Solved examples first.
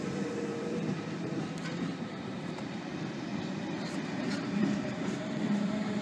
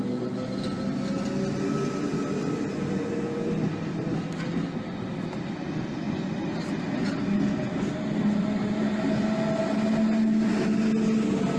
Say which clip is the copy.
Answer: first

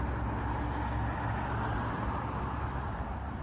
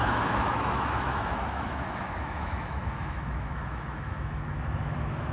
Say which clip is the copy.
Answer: second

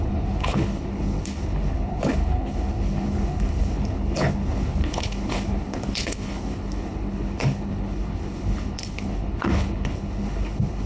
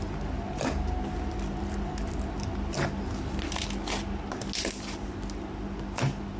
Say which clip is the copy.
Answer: first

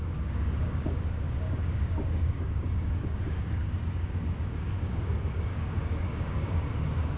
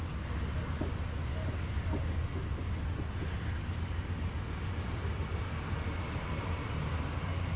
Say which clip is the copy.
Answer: first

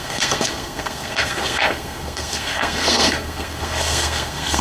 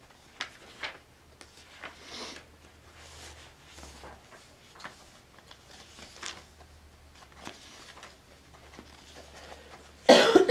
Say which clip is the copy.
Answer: first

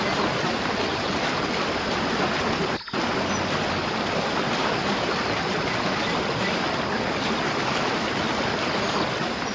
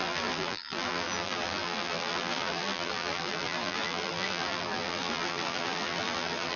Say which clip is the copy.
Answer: second